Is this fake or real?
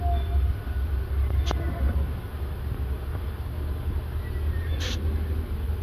real